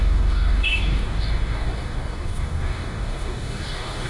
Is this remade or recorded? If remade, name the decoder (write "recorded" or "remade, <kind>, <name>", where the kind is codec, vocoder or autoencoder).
remade, codec, DAC